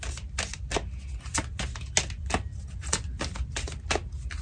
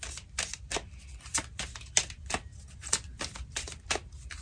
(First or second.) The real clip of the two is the first